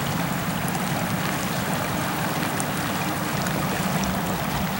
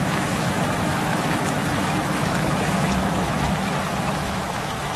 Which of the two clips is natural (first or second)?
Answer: first